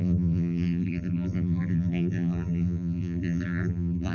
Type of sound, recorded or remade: remade